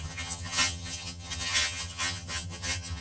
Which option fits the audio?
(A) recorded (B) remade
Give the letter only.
B